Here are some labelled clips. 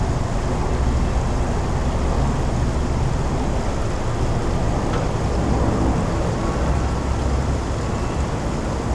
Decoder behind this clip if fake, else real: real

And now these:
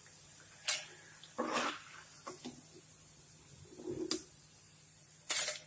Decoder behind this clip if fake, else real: real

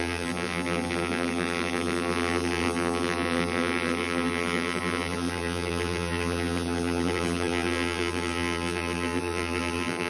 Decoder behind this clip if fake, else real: fake, vocoder, BigVGAN v2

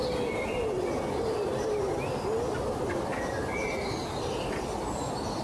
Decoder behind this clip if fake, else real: real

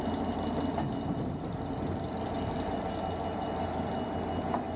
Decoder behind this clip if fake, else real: real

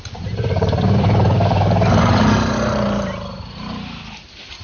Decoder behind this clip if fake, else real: fake, vocoder, BigVGAN v2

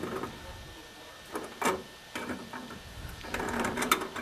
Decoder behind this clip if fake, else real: real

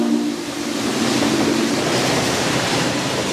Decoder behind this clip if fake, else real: fake, vocoder, BigVGAN v2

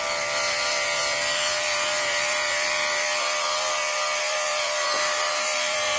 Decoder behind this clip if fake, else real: fake, vocoder, BigVGAN v2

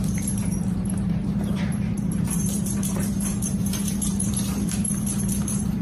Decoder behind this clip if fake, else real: fake, vocoder, BigVGAN v2